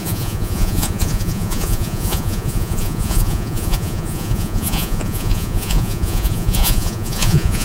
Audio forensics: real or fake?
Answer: fake